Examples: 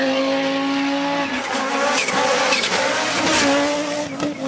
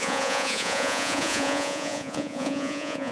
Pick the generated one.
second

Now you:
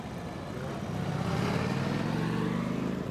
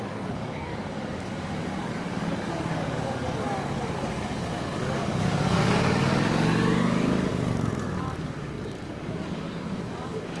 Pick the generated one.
second